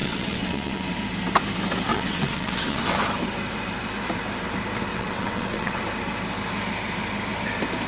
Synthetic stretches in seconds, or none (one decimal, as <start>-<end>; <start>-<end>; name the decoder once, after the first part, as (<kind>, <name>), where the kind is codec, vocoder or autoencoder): 0.0-0.9 (vocoder, WaveNeXt); 1.9-3.0; 4.9-5.8

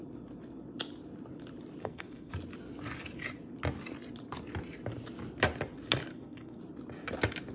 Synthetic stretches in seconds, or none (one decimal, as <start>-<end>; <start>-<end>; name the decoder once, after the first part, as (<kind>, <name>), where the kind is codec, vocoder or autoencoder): 1.8-2.3 (codec, SNAC); 6.1-6.6

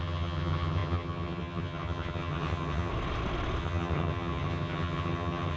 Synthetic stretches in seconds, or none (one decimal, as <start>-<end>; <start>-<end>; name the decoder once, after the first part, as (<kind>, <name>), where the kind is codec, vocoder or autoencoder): 0.0-2.9 (vocoder, HiFi-GAN); 3.6-5.6

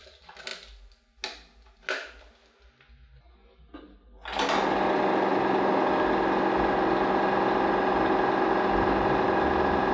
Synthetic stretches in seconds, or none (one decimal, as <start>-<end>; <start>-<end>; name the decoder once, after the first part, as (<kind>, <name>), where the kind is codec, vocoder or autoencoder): none

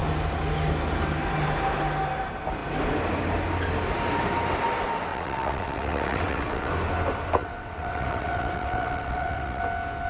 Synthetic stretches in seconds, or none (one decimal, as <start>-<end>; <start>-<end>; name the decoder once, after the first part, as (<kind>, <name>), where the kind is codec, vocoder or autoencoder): 5.1-6.7 (vocoder, WaveNeXt); 7.4-9.6

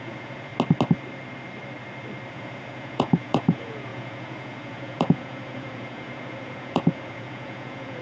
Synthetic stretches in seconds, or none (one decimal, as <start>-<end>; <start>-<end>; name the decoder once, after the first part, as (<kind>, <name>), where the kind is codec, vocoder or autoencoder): 0.0-0.5 (vocoder, Vocos); 2.3-8.0

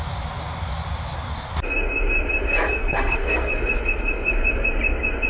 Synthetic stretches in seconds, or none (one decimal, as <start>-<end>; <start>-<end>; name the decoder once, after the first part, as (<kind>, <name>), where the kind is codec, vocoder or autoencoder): 2.8-3.5 (codec, SNAC)